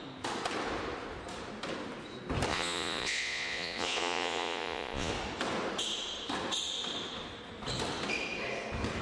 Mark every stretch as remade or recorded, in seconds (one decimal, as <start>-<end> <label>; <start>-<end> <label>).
0.0-2.5 recorded; 2.5-5.1 remade; 5.1-9.0 recorded